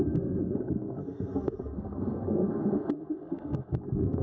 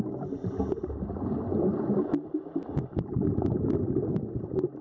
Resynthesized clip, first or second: first